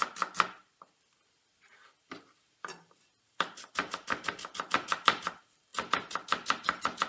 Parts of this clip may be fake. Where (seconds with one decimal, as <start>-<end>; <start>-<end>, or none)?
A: none